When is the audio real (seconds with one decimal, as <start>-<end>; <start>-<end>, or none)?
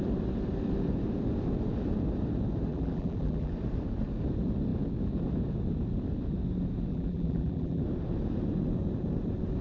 0.0-2.7; 3.5-6.9; 7.8-9.6